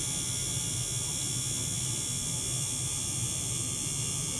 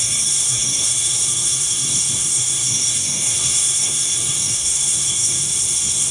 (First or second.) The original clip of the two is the first